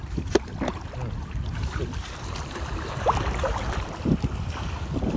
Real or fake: real